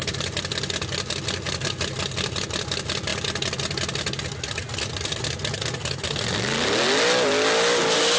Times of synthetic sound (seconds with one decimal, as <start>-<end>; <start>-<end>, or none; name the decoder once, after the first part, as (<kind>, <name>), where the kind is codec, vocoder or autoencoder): none